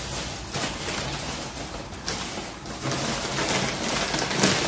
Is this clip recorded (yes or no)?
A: yes